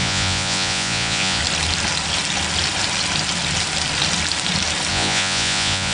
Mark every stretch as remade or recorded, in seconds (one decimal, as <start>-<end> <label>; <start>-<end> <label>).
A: 0.0-1.4 remade; 1.4-4.9 recorded; 4.9-5.9 remade